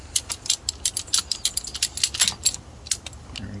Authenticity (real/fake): real